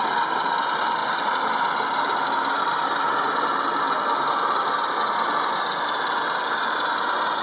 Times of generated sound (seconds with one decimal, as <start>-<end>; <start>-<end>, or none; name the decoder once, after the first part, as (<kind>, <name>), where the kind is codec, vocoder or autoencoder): none